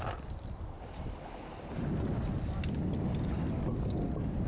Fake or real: real